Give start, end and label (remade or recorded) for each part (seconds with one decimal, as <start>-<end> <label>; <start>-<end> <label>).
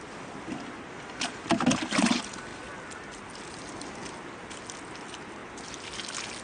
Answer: 0.0-6.4 recorded